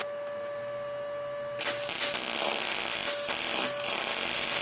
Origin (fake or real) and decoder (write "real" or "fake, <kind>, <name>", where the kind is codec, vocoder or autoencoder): real